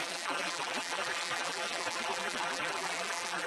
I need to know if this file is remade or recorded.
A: remade